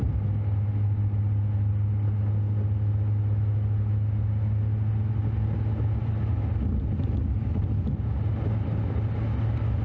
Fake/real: real